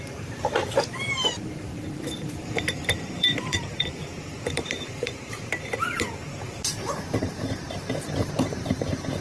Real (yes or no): no